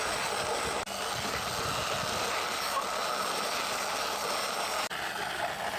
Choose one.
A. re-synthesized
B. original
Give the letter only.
B